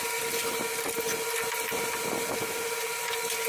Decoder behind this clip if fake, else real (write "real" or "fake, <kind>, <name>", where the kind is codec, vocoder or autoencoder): fake, vocoder, BigVGAN v2